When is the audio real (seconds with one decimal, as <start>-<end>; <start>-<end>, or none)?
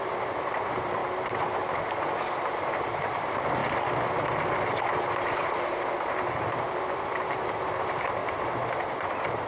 1.0-2.4; 3.6-6.3; 8.2-8.9